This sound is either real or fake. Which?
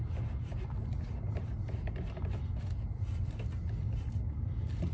real